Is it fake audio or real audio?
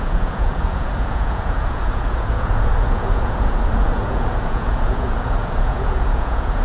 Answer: fake